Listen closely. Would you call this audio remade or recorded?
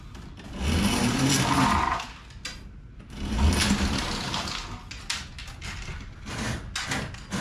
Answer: recorded